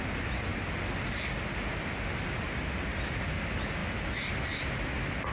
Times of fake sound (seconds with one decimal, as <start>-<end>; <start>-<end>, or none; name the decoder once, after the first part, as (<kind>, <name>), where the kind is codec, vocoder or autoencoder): none